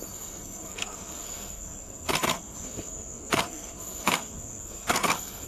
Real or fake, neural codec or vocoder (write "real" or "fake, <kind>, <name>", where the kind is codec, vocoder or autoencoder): fake, codec, SNAC